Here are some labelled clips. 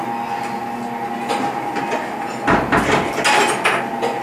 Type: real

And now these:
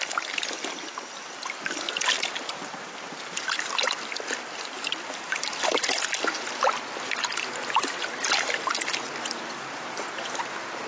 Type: real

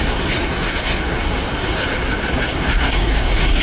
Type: fake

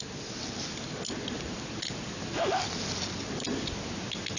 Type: real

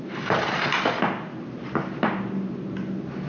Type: real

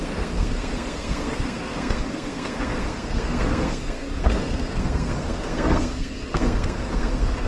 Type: fake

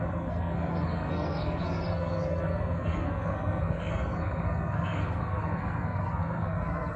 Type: fake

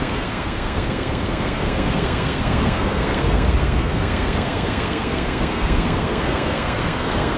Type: fake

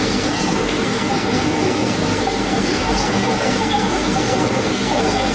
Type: fake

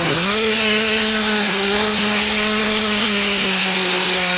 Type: fake